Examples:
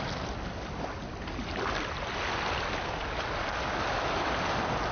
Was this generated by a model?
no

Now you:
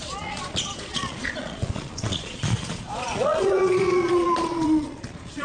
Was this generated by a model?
yes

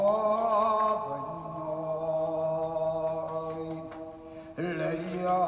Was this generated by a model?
no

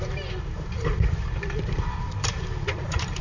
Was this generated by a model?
yes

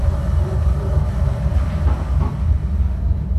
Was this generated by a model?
no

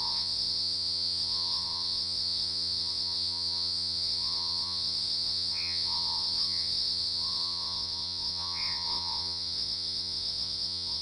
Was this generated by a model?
yes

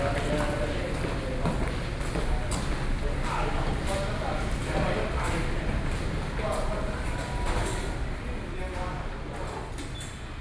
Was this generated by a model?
no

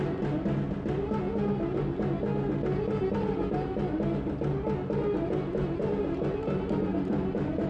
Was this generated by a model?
no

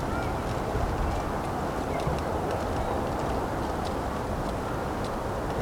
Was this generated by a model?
no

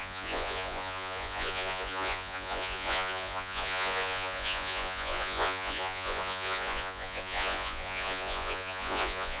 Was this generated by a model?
yes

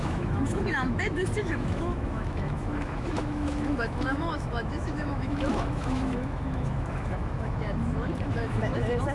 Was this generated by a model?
yes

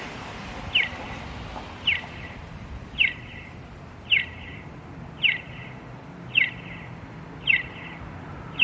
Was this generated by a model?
no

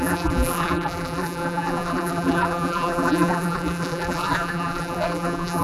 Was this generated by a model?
yes